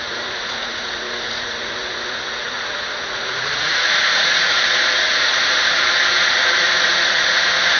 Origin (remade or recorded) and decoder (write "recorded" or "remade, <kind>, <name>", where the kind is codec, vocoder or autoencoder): remade, vocoder, Vocos